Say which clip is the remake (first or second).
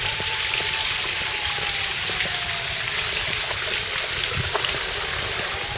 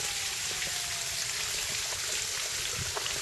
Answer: first